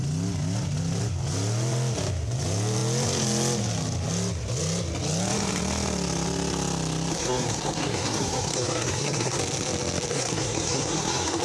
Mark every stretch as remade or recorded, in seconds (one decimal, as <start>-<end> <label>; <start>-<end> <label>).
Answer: 0.0-7.1 recorded; 7.1-9.4 remade; 9.4-10.1 recorded; 10.1-11.4 remade